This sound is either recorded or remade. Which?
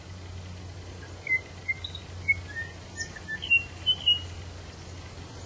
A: recorded